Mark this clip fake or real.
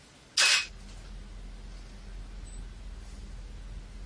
real